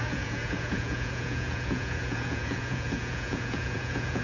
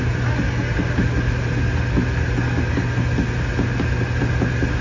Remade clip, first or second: first